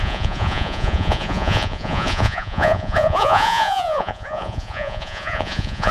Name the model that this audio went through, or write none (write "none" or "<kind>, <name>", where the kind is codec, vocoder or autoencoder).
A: vocoder, Vocos